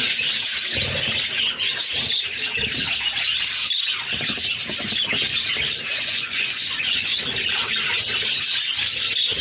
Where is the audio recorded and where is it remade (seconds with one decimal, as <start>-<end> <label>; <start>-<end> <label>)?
0.0-5.9 recorded; 5.9-7.1 remade; 7.1-9.4 recorded